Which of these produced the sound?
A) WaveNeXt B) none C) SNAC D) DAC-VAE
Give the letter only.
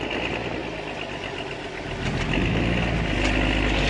B